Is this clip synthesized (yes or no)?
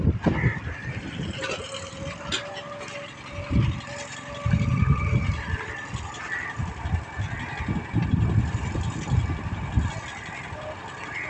no